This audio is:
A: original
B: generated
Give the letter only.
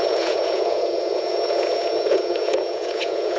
B